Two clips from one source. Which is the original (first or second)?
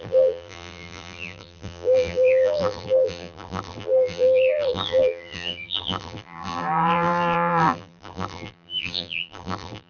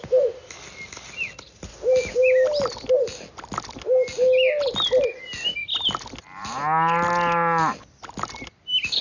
second